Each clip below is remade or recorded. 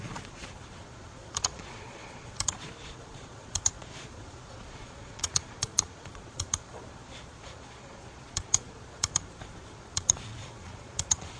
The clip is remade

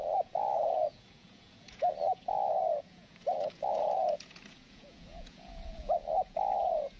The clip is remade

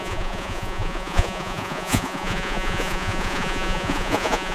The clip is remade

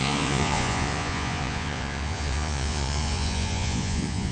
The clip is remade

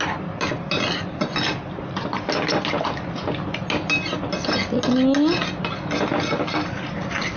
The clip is recorded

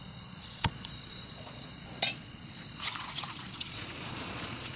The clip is remade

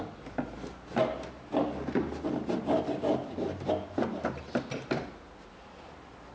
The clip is recorded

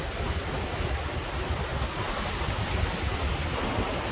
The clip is recorded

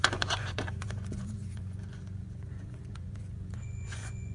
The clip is remade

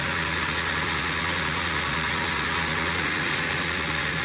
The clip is remade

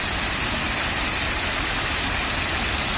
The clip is recorded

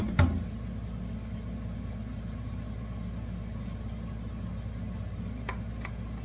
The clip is recorded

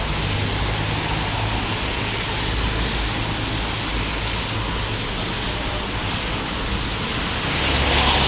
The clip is recorded